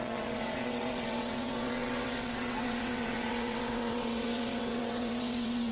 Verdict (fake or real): fake